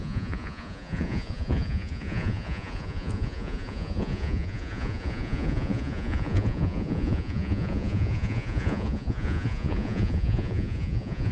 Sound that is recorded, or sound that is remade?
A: remade